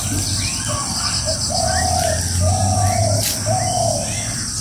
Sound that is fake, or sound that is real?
real